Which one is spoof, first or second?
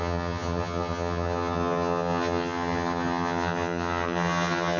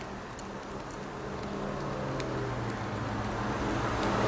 first